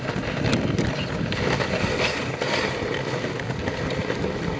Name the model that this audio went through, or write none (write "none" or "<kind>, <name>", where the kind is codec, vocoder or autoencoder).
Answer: none